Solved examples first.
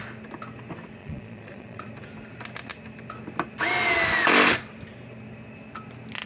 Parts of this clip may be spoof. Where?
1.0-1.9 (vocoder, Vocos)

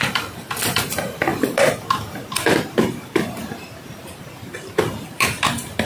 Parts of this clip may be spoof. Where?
none

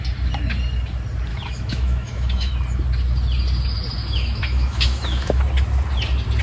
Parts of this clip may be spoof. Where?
1.3-2.5 (autoencoder, DAC-VAE); 4.0-5.4

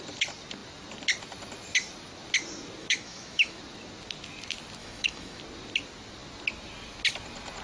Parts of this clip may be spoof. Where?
2.8-3.6 (autoencoder, DAC-VAE); 4.8-5.4

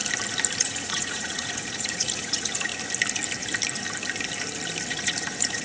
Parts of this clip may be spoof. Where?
0.6-2.7 (vocoder, Vocos); 4.9-5.6

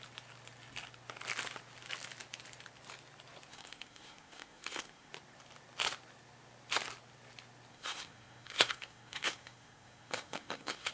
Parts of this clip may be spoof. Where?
3.5-5.1 (codec, SNAC); 7.7-10.9

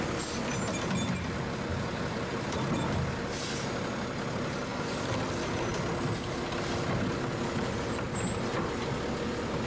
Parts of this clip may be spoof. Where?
none

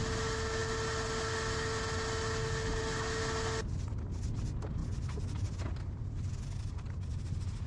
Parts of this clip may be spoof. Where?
none